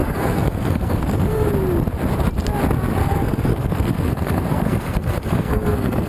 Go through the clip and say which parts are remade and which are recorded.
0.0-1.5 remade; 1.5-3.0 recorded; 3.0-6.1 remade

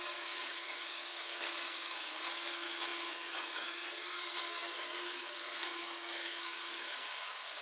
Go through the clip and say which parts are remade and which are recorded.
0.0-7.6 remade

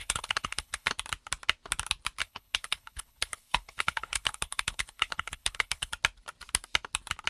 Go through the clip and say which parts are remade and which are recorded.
0.0-0.9 remade; 0.9-2.2 recorded; 2.2-5.9 remade; 5.9-7.3 recorded